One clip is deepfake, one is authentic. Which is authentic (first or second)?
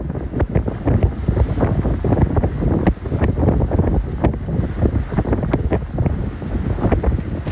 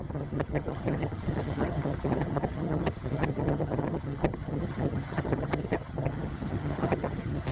first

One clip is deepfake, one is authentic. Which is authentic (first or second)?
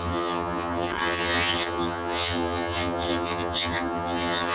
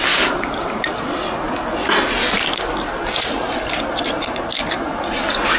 second